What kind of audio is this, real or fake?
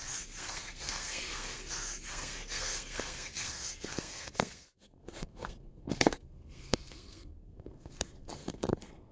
fake